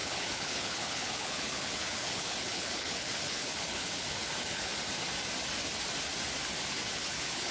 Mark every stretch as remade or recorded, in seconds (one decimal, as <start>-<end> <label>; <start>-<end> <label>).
0.0-4.7 remade; 4.7-6.9 recorded; 6.9-7.5 remade